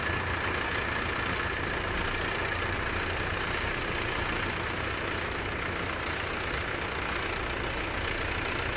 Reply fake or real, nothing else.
real